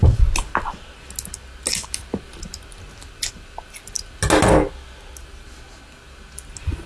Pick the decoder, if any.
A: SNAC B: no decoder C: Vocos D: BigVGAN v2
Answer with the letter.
B